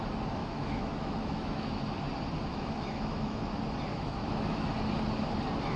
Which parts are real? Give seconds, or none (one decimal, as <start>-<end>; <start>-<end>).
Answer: 0.0-0.4; 1.8-2.5; 3.4-3.9; 4.7-5.8